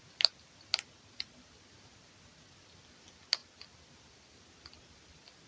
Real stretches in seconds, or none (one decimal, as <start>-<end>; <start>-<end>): 0.0-5.5